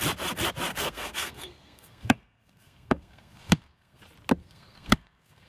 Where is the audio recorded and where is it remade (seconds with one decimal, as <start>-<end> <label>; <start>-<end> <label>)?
0.0-0.7 recorded; 0.7-4.0 remade; 4.0-4.4 recorded; 4.4-5.5 remade